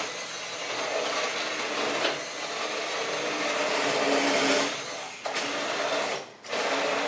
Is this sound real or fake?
real